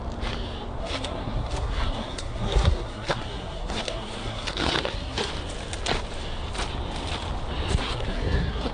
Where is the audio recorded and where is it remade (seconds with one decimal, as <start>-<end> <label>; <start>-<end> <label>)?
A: 0.0-0.8 recorded; 0.8-5.3 remade; 5.3-7.8 recorded; 7.8-8.7 remade